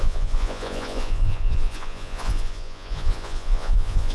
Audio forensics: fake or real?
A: fake